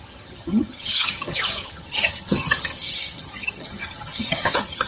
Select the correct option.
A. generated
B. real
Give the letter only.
A